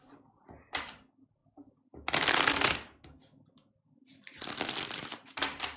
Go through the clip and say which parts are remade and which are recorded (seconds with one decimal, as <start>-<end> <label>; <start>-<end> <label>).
0.0-5.8 recorded